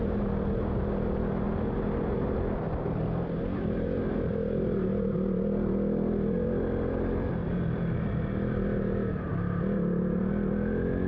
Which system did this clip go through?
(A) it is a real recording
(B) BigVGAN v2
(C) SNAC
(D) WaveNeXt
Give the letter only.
A